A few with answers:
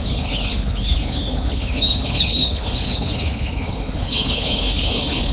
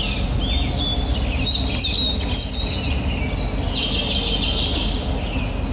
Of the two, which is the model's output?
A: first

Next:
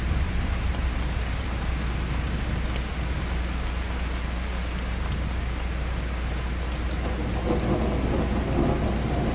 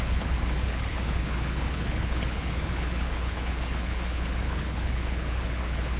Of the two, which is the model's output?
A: second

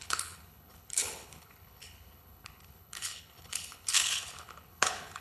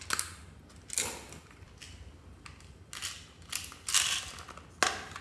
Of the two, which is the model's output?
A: first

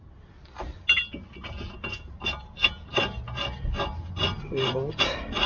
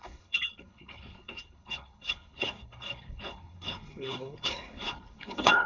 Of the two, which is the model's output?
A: second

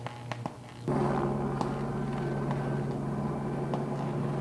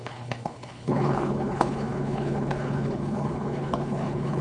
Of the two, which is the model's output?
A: second